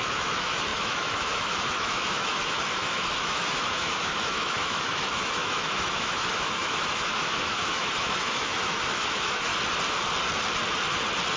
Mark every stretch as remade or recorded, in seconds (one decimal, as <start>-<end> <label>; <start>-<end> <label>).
0.0-9.5 remade; 9.5-11.4 recorded